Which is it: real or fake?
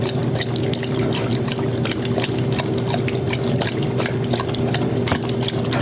real